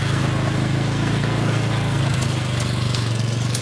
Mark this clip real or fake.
fake